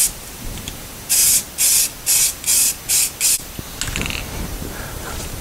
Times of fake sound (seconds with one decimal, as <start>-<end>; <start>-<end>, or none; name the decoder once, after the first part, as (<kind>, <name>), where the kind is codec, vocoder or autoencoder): 0.0-1.2 (vocoder, BigVGAN v2); 4.4-5.4